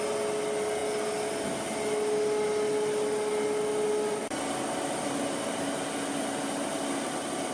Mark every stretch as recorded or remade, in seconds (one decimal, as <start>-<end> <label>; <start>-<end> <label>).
0.0-7.5 recorded